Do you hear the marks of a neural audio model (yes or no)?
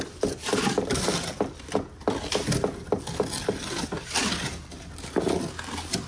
no